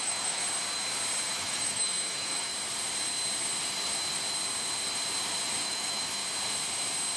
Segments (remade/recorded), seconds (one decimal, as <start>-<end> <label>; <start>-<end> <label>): 0.0-0.4 remade; 0.4-1.3 recorded; 1.3-2.5 remade; 2.5-5.6 recorded; 5.6-6.2 remade; 6.2-7.2 recorded